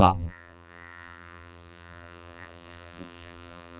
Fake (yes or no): yes